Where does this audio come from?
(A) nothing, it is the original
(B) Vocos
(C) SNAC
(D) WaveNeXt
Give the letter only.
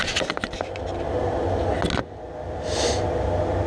A